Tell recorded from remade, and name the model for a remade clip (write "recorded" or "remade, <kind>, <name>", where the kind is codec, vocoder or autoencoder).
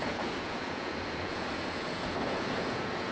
remade, vocoder, Vocos